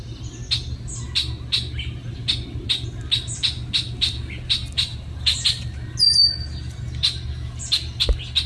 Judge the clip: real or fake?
real